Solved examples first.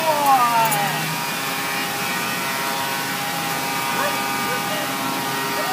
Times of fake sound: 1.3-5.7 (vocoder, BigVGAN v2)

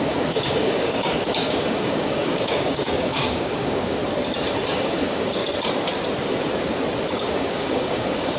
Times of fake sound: 0.0-4.0 (codec, DAC); 4.7-5.4; 7.2-8.4

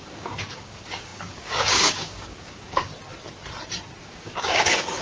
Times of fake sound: 0.0-2.9 (codec, DAC); 4.0-5.0

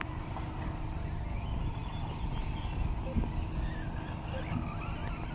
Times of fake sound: none

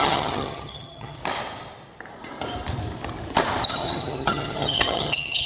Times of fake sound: 0.0-1.2 (vocoder, HiFi-GAN); 3.7-5.5